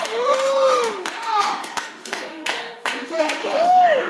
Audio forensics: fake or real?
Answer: fake